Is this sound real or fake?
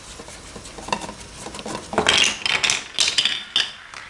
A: real